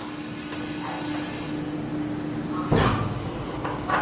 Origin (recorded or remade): recorded